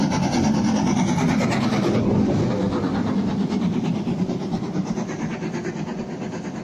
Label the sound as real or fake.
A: real